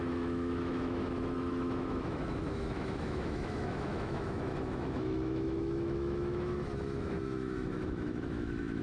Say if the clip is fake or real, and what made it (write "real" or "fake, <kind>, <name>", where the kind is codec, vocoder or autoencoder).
fake, autoencoder, DAC-VAE